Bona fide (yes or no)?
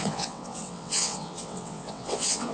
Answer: no